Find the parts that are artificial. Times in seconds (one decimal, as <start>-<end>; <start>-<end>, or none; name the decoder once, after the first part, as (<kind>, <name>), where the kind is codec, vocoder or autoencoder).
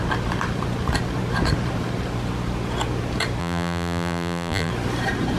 3.4-4.7 (vocoder, BigVGAN v2)